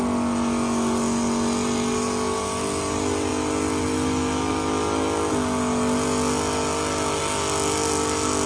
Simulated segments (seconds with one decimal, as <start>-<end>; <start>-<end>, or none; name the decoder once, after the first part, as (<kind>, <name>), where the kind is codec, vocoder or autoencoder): none